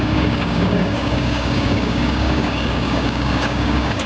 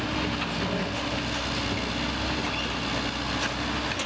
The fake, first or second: first